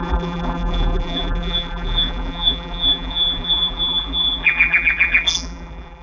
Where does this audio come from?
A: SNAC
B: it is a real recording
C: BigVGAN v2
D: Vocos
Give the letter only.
C